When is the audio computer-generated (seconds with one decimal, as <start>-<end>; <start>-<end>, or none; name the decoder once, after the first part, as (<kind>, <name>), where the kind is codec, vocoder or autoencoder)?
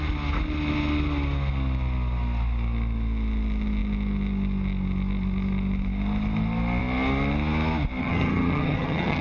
8.0-9.2 (vocoder, HiFi-GAN)